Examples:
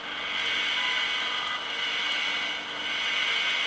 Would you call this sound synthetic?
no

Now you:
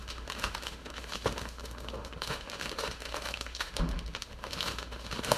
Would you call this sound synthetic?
yes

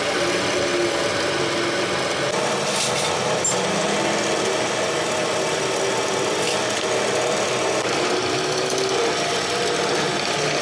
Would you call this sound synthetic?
no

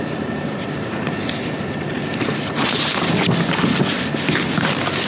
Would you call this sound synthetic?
no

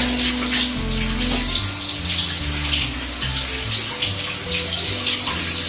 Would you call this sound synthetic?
no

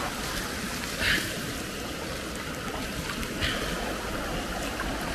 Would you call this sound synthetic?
no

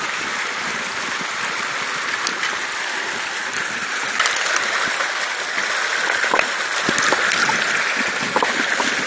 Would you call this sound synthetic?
no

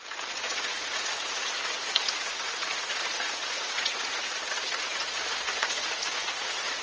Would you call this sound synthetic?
yes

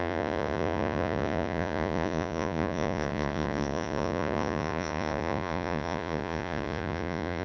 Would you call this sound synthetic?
yes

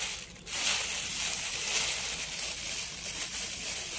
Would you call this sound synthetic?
no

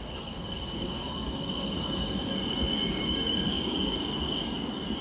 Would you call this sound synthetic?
yes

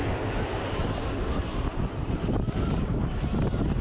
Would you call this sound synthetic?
no